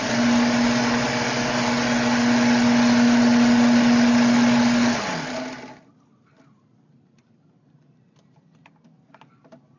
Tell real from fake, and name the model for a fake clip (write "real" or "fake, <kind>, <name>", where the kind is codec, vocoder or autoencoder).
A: real